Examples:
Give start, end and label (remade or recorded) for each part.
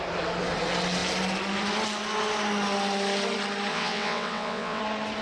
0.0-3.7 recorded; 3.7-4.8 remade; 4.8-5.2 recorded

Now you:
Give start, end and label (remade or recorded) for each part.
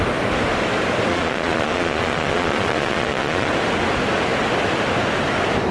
0.0-1.1 recorded; 1.1-3.5 remade; 3.5-5.7 recorded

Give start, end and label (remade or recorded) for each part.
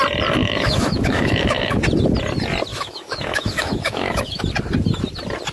0.0-0.4 recorded; 0.4-1.8 remade; 1.8-2.7 recorded; 2.7-4.4 remade; 4.4-5.5 recorded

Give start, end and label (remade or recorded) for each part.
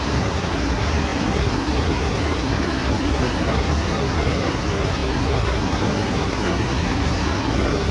0.0-7.9 remade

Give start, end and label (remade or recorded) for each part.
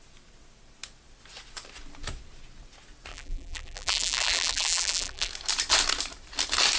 0.0-3.1 recorded; 3.1-5.3 remade; 5.3-6.8 recorded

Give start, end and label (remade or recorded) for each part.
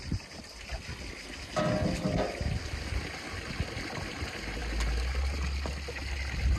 0.0-6.6 recorded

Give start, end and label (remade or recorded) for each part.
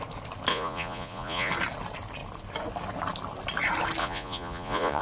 0.0-0.5 recorded; 0.5-1.5 remade; 1.5-4.0 recorded; 4.0-5.0 remade